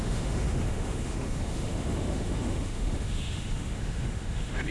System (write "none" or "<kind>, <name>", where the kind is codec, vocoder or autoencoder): autoencoder, DAC-VAE